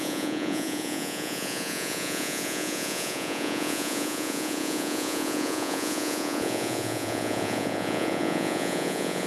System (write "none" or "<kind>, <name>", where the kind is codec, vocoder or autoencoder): vocoder, Vocos